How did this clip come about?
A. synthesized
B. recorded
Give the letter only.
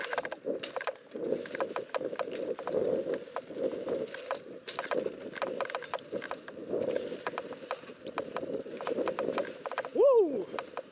B